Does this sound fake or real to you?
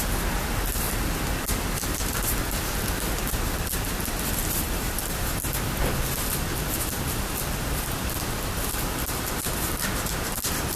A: real